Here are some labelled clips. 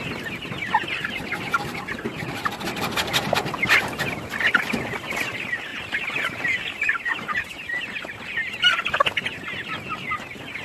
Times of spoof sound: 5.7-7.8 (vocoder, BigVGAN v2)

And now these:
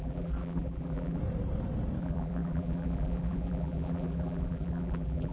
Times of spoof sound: 0.0-1.2 (vocoder, BigVGAN v2); 2.0-5.3

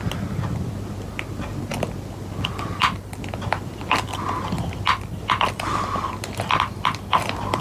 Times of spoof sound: none

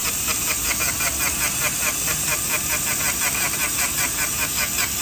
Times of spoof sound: none

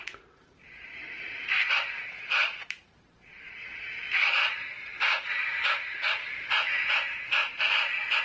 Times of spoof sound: 0.0-8.2 (vocoder, BigVGAN v2)

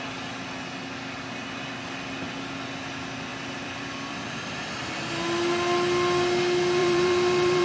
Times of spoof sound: 3.3-5.1 (vocoder, BigVGAN v2); 6.8-7.6

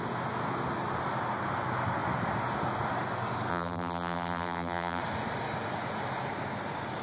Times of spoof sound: 3.5-5.0 (vocoder, BigVGAN v2)